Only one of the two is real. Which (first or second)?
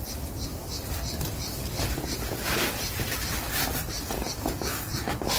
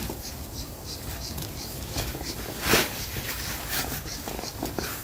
first